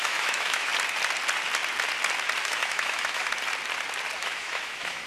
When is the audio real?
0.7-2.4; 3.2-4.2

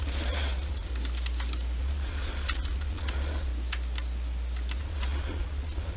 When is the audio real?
0.9-1.8; 3.5-4.8

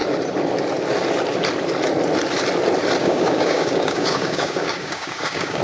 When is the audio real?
0.0-3.0

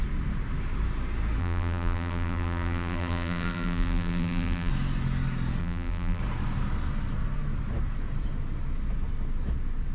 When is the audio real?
0.0-1.4; 4.7-5.6; 6.2-9.9

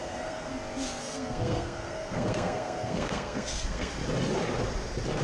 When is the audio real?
0.5-1.0; 3.9-5.2

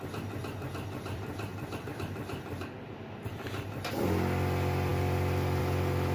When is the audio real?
0.0-1.5; 3.5-6.1